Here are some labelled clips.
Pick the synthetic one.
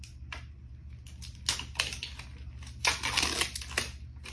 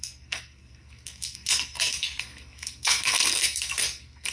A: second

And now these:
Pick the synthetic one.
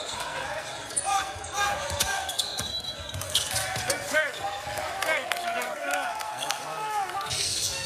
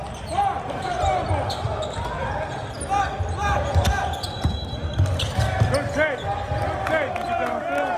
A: first